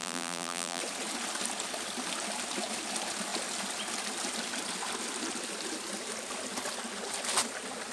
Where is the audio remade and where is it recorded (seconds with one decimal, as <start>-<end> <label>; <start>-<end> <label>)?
0.0-0.8 remade; 0.8-7.9 recorded